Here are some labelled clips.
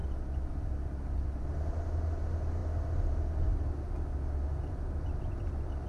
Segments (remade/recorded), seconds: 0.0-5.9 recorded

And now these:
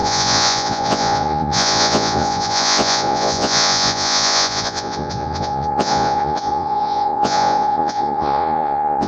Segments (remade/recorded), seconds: 0.0-9.1 remade

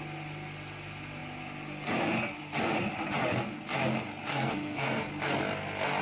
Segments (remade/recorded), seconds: 0.0-4.3 recorded; 4.3-5.1 remade; 5.1-6.0 recorded